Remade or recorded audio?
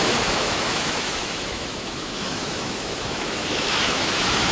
remade